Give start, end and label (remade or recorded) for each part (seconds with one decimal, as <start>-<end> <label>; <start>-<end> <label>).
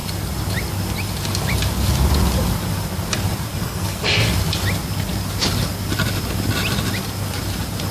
0.0-3.5 recorded; 3.5-4.0 remade; 4.0-7.9 recorded